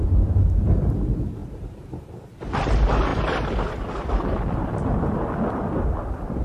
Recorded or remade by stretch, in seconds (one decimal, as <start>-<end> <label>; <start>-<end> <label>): 0.0-6.4 recorded